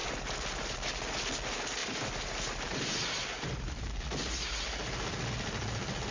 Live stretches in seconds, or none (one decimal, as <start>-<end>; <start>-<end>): 0.0-1.8; 4.0-6.1